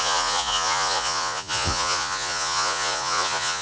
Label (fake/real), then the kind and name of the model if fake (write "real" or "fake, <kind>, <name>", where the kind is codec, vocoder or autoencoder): fake, vocoder, Vocos